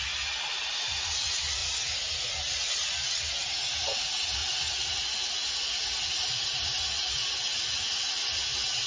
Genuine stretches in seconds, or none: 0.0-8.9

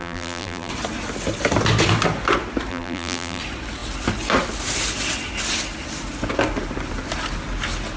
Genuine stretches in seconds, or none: 0.7-2.7; 3.4-8.0

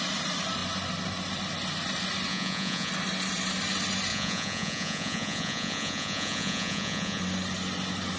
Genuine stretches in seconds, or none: 0.0-2.3; 2.9-4.1; 7.2-8.2

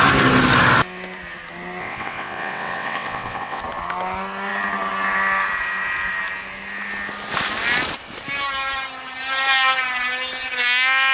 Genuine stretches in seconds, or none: 0.0-1.8; 3.6-11.1

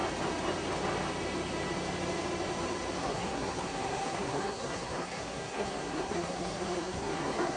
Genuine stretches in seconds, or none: 0.0-3.0

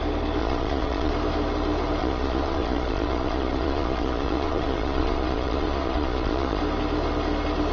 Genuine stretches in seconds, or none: 0.0-0.4; 1.1-2.0; 6.6-7.7

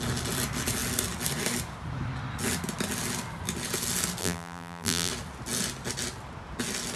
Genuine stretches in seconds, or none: 0.0-4.2; 5.1-7.0